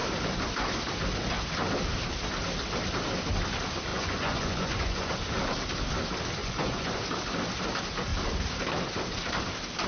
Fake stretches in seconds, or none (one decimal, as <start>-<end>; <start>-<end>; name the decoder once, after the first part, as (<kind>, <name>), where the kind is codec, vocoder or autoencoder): 3.9-5.1 (vocoder, Vocos); 6.4-7.0